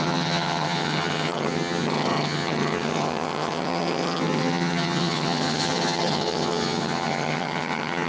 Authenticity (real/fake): fake